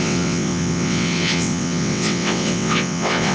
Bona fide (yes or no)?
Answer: no